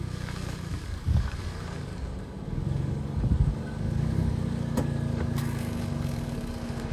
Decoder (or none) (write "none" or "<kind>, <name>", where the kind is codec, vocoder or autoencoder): codec, DAC